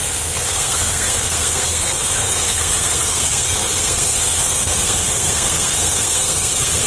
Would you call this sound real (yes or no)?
no